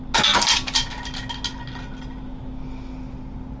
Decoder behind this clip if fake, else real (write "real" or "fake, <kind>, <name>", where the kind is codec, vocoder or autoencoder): real